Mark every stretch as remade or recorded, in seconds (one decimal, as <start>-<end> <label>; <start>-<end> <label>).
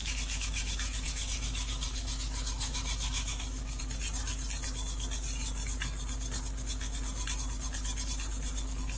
0.0-3.8 remade; 3.8-9.0 recorded